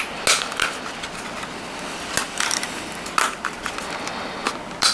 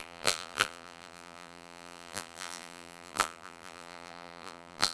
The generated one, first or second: second